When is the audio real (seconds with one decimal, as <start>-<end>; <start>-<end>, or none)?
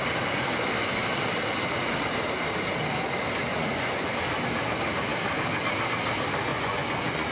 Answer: 0.0-3.5; 4.3-6.5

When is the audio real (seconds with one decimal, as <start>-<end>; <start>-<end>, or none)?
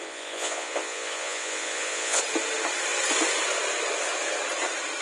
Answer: 2.2-5.0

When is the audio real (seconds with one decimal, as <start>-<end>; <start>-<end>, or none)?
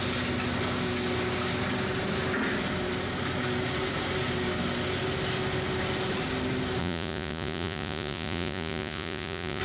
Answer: 0.0-6.8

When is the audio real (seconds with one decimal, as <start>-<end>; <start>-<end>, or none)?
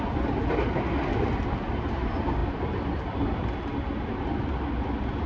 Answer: 0.0-5.3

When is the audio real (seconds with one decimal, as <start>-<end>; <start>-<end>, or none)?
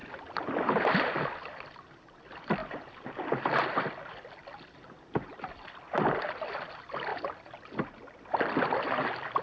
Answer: 0.0-9.4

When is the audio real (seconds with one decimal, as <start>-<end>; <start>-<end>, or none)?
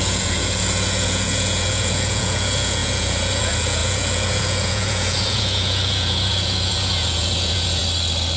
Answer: 7.8-8.4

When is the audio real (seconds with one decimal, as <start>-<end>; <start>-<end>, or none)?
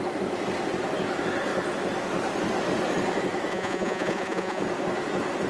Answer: 0.0-3.5; 4.6-5.5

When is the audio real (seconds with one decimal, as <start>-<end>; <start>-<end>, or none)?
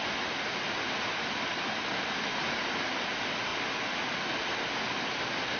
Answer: 0.0-5.6